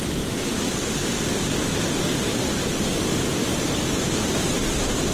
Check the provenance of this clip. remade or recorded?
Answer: remade